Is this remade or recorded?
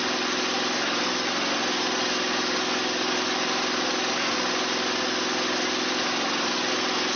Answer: recorded